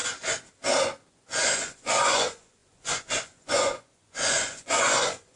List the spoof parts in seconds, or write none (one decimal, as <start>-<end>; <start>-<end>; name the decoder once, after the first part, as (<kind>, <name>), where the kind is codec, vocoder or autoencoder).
1.1-5.4 (vocoder, Vocos)